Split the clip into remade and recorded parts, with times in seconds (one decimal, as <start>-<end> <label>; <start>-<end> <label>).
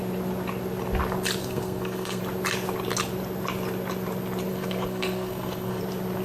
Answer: 0.0-1.4 recorded; 1.4-2.2 remade; 2.2-4.5 recorded; 4.5-5.8 remade; 5.8-6.2 recorded